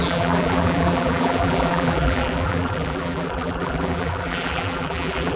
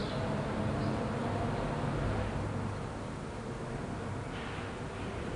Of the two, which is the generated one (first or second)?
first